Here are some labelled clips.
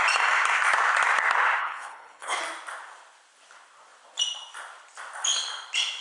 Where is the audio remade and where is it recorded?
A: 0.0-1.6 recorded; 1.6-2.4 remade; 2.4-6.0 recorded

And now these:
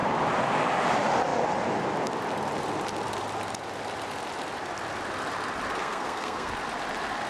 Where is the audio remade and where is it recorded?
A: 0.0-5.8 recorded; 5.8-6.5 remade; 6.5-7.3 recorded

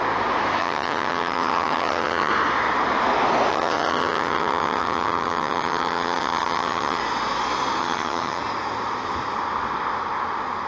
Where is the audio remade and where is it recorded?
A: 0.0-0.6 recorded; 0.6-2.3 remade; 2.3-3.5 recorded; 3.5-7.0 remade; 7.0-7.8 recorded; 7.8-8.4 remade; 8.4-10.7 recorded